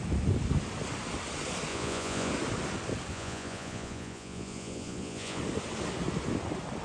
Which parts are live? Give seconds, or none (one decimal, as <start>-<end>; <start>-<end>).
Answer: 0.0-1.7; 2.3-3.1; 5.4-6.8